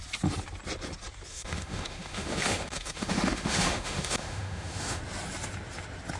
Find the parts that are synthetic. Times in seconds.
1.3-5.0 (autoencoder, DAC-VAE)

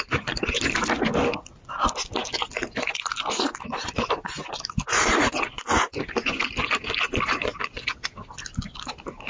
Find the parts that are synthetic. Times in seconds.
none

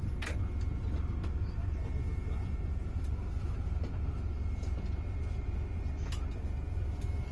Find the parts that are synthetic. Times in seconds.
none

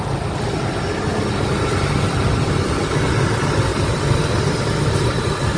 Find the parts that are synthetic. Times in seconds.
none

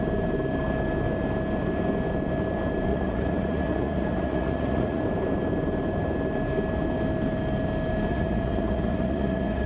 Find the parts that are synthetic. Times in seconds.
2.9-5.0 (vocoder, Vocos); 8.1-9.7